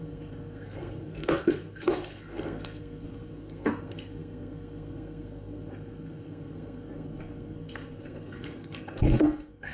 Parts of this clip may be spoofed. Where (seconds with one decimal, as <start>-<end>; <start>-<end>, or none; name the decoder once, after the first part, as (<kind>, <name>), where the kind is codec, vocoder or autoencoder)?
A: 0.0-9.7 (codec, SNAC)